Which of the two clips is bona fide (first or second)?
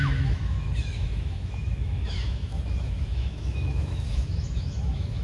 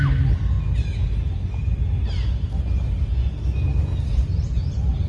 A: second